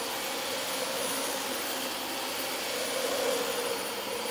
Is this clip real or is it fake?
real